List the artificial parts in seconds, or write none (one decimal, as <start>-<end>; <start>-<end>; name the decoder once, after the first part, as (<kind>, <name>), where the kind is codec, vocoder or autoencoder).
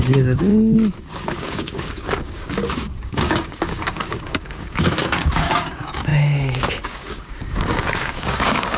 0.0-0.5 (codec, DAC); 1.0-8.8